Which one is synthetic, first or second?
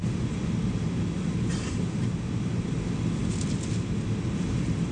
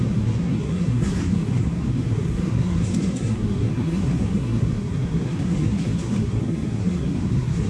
second